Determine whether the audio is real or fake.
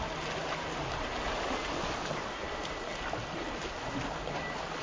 real